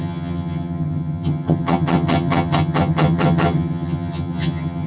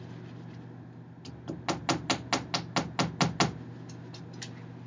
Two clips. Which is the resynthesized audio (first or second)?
first